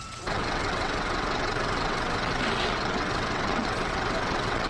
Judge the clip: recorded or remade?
remade